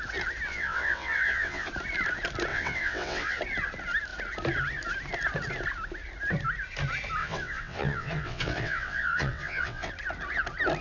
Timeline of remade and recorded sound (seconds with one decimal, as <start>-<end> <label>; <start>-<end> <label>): 0.0-0.5 recorded; 0.5-1.7 remade; 1.7-2.5 recorded; 2.5-3.4 remade; 3.4-7.2 recorded; 7.2-9.9 remade; 9.9-10.8 recorded